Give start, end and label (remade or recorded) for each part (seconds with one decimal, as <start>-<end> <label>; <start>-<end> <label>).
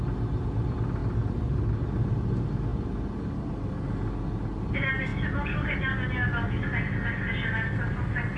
0.0-8.4 recorded